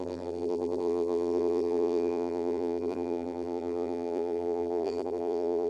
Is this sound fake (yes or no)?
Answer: yes